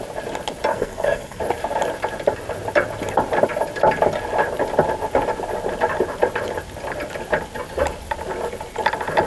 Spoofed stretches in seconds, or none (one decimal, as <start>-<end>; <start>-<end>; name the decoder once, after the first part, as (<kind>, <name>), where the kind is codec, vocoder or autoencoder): 0.7-1.4 (codec, SNAC)